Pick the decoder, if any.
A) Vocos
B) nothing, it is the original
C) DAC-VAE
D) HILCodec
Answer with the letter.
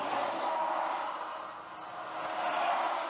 B